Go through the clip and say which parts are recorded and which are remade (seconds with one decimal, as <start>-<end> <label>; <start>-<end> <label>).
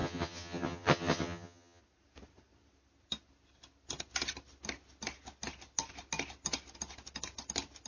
0.0-1.8 remade; 1.8-7.9 recorded